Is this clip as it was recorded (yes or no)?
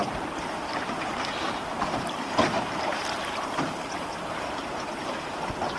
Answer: no